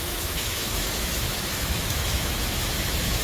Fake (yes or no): yes